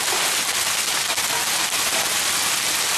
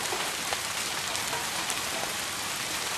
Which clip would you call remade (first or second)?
second